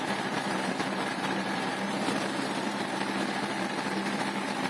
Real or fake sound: fake